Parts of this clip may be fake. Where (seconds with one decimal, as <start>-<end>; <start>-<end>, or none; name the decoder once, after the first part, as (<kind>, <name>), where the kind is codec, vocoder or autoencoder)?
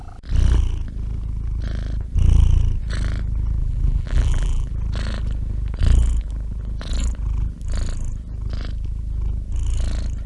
3.6-4.7 (vocoder, BigVGAN v2)